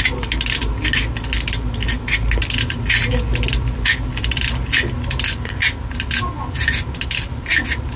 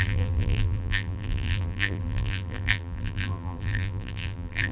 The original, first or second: first